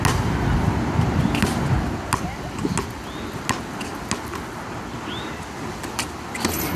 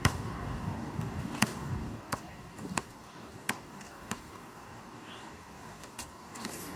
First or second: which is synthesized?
second